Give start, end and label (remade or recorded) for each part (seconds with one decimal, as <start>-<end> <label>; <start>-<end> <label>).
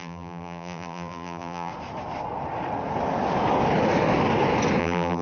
0.0-1.7 remade; 1.7-4.8 recorded; 4.8-5.2 remade